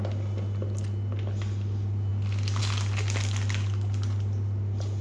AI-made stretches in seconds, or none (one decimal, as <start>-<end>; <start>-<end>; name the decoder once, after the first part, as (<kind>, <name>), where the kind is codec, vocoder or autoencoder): none